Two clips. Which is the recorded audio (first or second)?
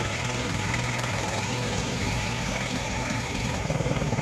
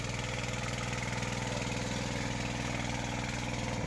second